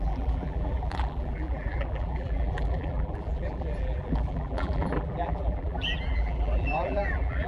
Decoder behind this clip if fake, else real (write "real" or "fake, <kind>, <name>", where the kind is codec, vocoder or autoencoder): fake, vocoder, BigVGAN v2